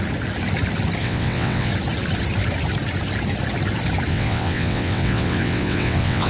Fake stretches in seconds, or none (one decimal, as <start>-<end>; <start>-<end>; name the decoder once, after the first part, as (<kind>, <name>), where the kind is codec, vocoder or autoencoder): 1.0-1.7 (vocoder, WaveNeXt); 4.1-6.3